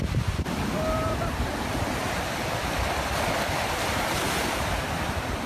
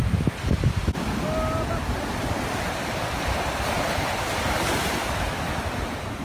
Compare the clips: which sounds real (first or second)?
second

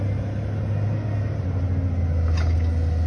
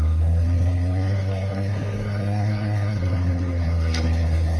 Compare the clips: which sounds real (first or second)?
first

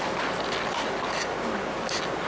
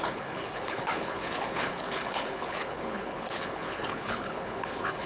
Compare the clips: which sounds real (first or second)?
first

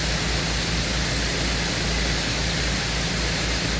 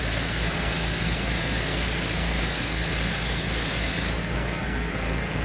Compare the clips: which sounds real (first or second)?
first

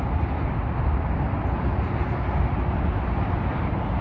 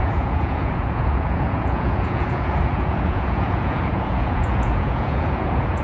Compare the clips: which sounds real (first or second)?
first